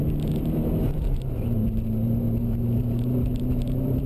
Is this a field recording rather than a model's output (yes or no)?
no